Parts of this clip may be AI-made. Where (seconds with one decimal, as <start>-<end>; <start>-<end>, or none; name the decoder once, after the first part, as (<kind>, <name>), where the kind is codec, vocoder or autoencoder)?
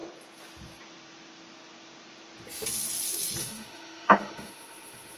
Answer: 3.4-5.2 (autoencoder, DAC-VAE)